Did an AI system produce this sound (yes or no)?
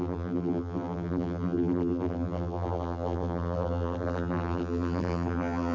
yes